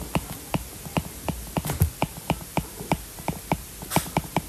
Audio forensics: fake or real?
fake